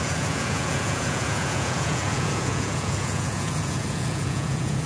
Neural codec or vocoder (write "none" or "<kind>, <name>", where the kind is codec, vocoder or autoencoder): vocoder, Vocos